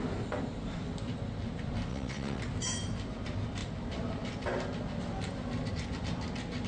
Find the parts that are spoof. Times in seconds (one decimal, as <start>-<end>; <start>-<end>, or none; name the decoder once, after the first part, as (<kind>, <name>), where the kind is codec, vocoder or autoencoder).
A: 1.9-2.4 (vocoder, WaveNeXt)

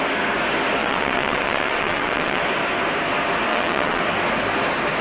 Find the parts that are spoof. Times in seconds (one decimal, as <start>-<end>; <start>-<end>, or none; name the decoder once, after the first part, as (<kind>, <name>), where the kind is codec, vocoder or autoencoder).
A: 0.8-2.4 (vocoder, WaveNeXt); 3.5-4.0

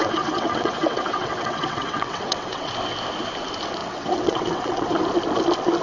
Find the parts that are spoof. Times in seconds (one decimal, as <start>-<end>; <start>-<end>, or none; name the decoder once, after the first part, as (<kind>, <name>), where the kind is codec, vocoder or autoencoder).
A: 0.0-2.7 (vocoder, WaveNeXt); 3.8-5.0

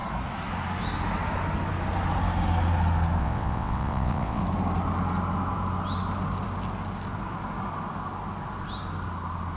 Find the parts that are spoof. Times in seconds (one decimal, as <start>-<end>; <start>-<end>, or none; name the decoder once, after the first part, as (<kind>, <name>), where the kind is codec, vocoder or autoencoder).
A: 3.2-4.4 (vocoder, WaveNeXt)

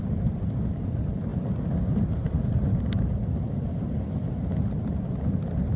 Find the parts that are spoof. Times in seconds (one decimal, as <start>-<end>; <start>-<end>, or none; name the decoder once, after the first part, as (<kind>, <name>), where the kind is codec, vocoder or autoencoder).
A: none

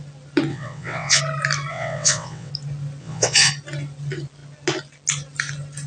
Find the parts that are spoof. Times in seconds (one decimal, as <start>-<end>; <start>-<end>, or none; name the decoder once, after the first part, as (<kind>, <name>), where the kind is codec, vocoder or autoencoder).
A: 0.5-1.2 (vocoder, WaveNeXt); 1.7-2.5; 3.0-3.5

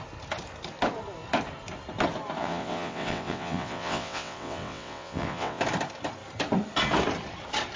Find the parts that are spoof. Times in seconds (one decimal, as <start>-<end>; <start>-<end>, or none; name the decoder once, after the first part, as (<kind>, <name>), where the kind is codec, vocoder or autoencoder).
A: 2.4-5.6 (vocoder, WaveNeXt)